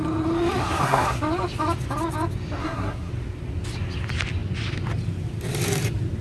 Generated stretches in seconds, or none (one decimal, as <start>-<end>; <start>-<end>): 0.6-1.2; 2.6-3.1